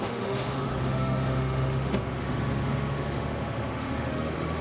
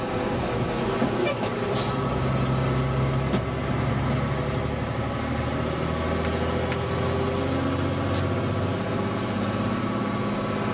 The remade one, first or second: first